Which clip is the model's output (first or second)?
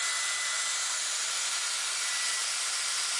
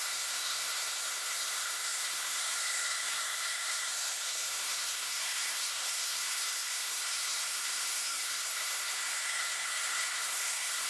second